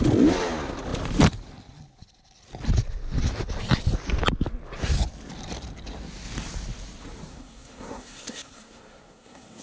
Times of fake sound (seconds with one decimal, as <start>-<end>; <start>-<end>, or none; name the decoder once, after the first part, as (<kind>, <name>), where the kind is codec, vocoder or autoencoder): 7.3-9.6 (codec, SNAC)